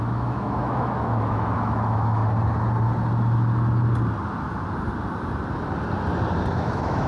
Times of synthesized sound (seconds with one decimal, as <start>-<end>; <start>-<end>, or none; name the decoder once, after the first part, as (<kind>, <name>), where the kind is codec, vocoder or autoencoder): 0.0-2.2 (autoencoder, DAC-VAE); 6.5-7.1